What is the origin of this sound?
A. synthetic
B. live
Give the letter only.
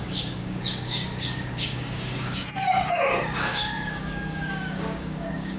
A